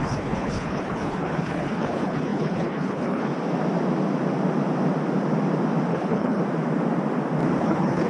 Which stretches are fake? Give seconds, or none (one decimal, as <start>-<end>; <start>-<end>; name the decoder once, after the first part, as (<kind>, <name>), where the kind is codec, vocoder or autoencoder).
0.0-3.3 (codec, HILCodec); 5.9-6.4; 7.6-8.1